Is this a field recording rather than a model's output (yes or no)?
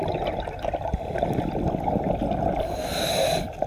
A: yes